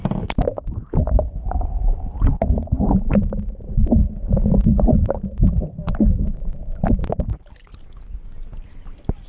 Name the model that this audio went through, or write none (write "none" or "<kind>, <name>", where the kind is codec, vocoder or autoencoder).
none